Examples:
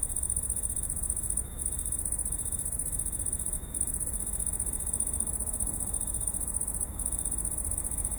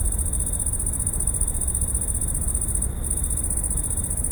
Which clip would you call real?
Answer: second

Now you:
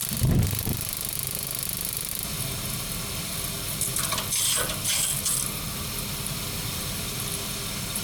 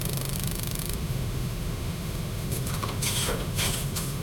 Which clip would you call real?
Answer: first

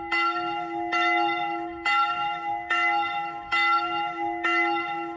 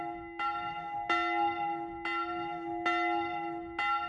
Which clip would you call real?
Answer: second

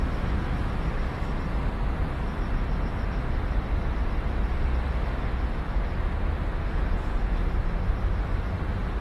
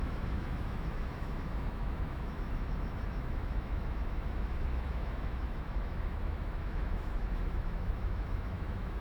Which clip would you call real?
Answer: first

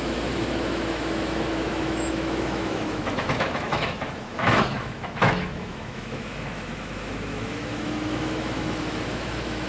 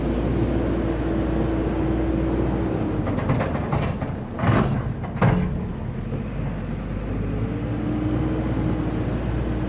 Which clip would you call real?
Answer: second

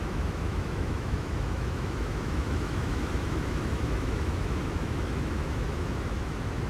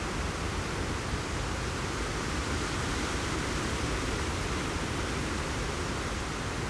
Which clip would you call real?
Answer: second